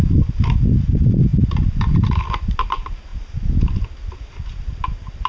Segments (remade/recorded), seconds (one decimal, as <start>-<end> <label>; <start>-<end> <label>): 0.0-5.3 recorded